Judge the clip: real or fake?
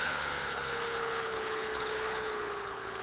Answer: fake